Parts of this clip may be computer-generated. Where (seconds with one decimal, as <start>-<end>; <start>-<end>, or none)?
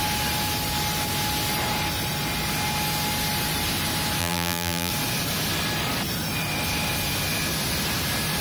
4.2-4.9